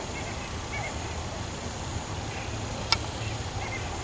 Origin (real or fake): real